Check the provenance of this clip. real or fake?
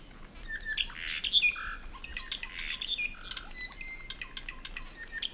real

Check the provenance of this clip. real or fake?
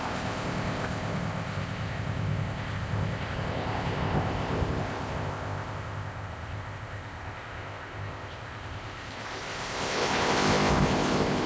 fake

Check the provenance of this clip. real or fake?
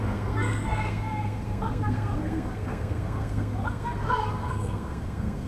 fake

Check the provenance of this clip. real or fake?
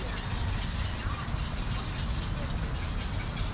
real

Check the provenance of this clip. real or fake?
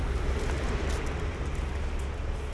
real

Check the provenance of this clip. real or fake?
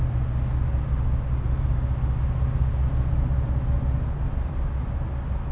real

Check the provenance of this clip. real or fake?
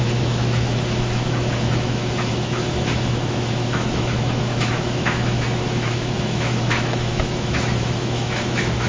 fake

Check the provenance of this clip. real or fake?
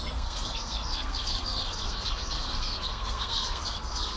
fake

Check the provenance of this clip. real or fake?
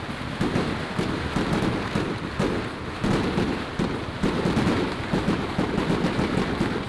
real